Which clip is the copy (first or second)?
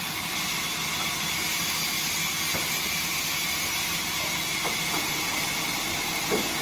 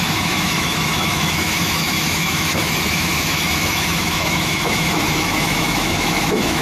second